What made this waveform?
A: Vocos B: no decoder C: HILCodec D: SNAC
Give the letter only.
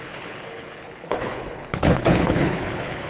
C